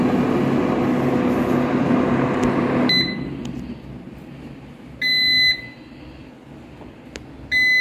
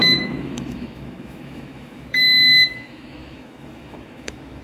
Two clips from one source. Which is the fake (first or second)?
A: second